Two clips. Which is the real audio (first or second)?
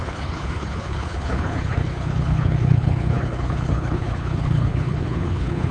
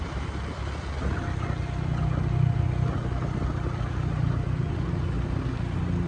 second